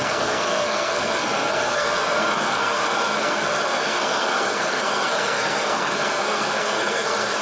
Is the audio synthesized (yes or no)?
yes